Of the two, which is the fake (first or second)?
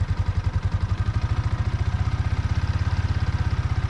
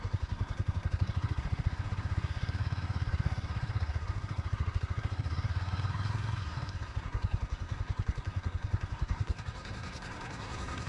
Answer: second